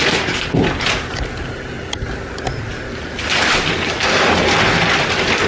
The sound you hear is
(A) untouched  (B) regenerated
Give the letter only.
A